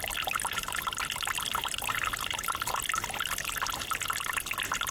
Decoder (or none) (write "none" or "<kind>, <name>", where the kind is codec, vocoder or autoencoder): none